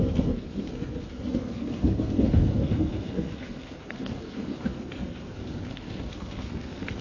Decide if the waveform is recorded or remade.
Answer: remade